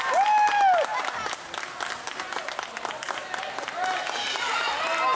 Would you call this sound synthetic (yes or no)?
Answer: no